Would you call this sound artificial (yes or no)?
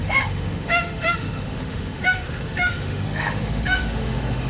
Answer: yes